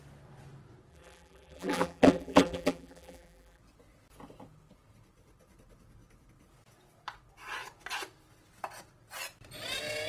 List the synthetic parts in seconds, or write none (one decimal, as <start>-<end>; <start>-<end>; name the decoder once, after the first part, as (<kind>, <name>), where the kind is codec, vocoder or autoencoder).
0.9-3.6 (vocoder, BigVGAN v2)